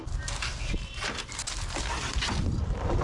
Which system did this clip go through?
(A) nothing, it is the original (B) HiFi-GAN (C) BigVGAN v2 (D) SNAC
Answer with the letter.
A